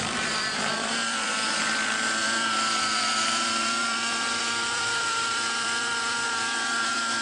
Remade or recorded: remade